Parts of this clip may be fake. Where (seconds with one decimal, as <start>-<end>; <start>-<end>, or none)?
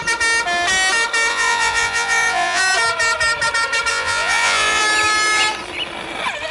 1.3-2.6; 3.9-4.8